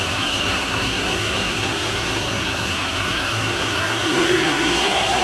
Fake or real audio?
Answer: fake